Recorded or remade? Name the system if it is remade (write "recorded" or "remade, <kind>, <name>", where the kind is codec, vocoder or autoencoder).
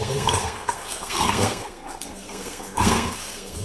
remade, codec, SNAC